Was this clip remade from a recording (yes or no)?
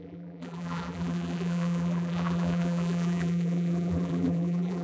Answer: yes